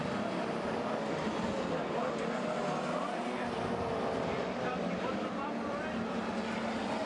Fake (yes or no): no